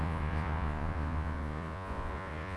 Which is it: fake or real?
fake